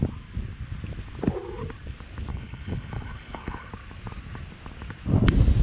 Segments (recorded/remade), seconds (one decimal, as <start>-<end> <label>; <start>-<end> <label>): 0.0-2.3 recorded; 2.3-3.7 remade; 3.7-5.6 recorded